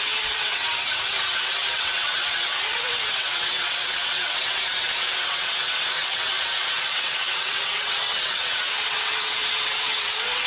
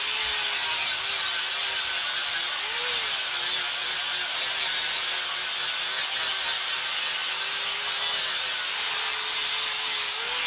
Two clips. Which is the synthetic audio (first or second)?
first